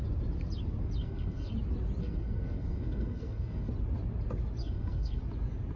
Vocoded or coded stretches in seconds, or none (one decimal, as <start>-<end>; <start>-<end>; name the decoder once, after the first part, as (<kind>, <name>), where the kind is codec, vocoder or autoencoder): 1.0-1.5 (codec, SNAC); 2.0-3.7; 4.6-5.2